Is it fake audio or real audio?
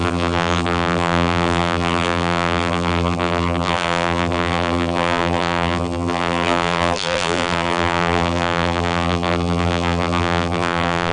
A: fake